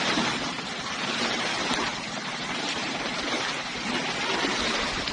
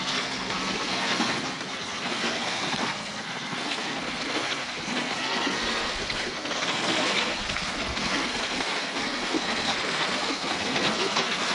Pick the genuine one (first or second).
first